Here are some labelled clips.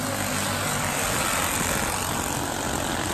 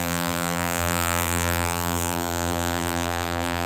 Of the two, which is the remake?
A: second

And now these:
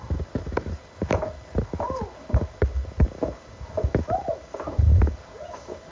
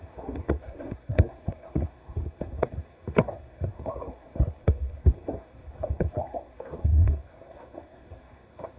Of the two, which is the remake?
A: second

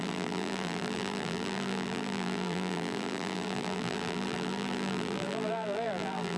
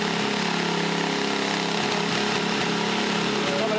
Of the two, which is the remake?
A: first